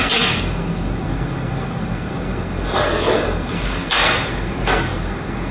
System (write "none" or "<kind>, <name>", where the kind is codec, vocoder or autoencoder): codec, SNAC